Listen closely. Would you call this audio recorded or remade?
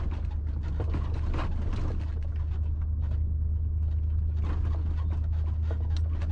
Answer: recorded